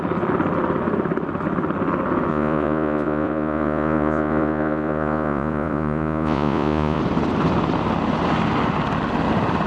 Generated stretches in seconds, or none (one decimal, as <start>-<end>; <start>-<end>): 2.3-7.0